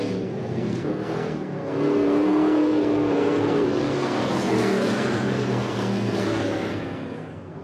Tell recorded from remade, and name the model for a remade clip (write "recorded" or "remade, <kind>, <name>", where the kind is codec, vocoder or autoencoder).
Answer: remade, codec, SNAC